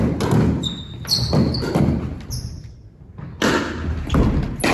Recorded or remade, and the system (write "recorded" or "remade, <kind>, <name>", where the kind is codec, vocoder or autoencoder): recorded